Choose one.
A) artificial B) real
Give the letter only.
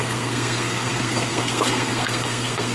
A